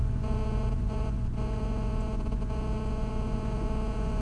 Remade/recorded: remade